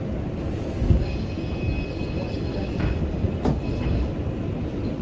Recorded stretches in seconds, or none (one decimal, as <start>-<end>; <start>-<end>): 0.0-0.8; 1.3-2.5; 3.0-5.0